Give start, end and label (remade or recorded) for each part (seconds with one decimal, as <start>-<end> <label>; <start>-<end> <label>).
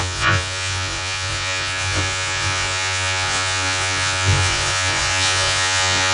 0.0-6.1 remade